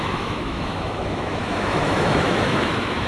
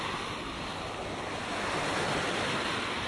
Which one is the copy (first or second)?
first